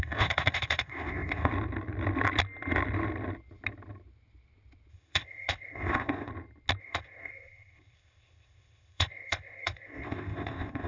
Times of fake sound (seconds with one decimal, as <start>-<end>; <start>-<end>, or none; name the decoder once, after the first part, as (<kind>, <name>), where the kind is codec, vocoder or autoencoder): 0.0-1.5 (codec, ZipCodec); 4.9-6.3; 6.8-10.9